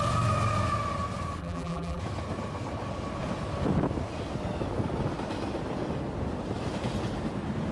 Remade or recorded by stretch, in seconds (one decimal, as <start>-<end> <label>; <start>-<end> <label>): 0.0-1.4 recorded; 1.4-2.0 remade; 2.0-7.7 recorded